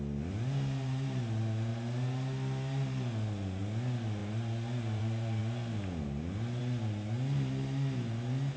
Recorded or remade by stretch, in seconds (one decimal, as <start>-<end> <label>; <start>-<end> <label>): 0.0-8.6 recorded